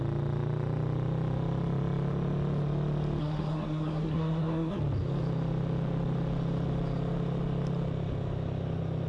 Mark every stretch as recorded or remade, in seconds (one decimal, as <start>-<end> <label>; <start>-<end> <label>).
0.0-3.2 recorded; 3.2-4.8 remade; 4.8-9.1 recorded